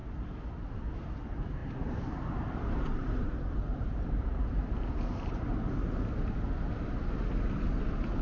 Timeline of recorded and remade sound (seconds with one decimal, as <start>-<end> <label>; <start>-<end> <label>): 0.0-0.7 remade; 0.7-1.6 recorded; 1.6-5.3 remade; 5.3-8.2 recorded